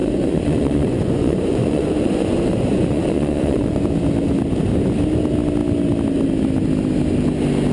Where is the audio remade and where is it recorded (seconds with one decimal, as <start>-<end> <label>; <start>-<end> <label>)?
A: 0.0-3.8 remade; 3.8-7.7 recorded